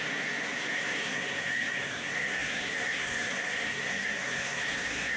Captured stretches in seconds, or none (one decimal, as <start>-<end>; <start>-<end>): none